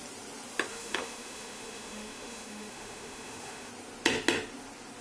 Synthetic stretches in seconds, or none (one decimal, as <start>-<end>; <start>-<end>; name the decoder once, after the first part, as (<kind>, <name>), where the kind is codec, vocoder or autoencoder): 0.7-3.7 (autoencoder, DAC-VAE)